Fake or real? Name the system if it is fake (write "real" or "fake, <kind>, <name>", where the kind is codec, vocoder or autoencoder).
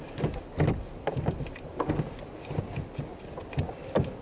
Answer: real